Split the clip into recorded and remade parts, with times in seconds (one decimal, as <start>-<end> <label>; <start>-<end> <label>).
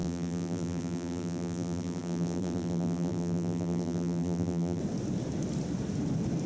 0.0-4.8 remade; 4.8-6.5 recorded